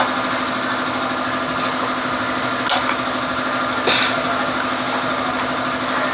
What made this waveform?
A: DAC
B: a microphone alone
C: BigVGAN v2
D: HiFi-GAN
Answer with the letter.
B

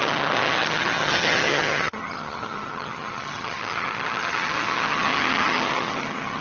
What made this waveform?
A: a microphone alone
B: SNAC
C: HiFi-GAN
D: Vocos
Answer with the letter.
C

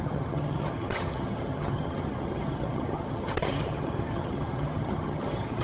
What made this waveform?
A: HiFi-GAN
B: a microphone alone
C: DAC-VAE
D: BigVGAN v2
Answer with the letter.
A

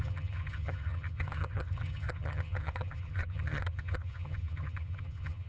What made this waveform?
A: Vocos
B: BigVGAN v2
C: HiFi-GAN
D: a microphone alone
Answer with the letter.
C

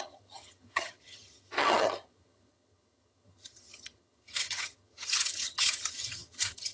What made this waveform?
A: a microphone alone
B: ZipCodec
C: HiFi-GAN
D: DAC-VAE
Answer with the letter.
C